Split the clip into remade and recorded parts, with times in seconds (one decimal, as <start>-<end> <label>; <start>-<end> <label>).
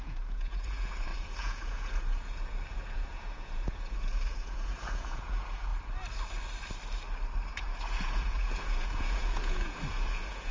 0.0-5.7 remade; 5.7-7.5 recorded; 7.5-10.5 remade